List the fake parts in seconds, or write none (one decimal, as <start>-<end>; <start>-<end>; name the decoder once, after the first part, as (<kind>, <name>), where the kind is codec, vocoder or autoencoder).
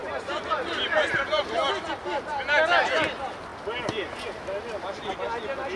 none